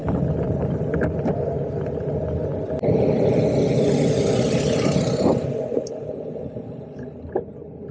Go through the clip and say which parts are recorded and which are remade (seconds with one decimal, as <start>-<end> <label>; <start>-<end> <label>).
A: 0.0-7.9 recorded